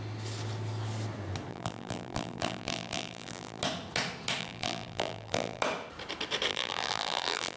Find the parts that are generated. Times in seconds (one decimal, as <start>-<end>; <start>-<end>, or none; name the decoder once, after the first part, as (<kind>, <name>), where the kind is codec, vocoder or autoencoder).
1.5-3.6 (vocoder, BigVGAN v2); 4.4-5.6; 6.5-7.6